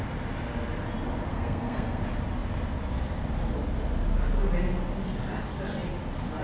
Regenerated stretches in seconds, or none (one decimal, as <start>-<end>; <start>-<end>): 1.3-2.0